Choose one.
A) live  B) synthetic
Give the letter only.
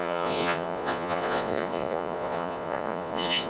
B